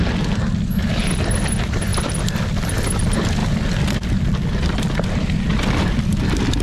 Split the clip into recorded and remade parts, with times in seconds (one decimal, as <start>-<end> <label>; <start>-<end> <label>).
0.0-6.6 recorded